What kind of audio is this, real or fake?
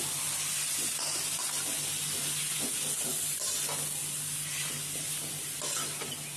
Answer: real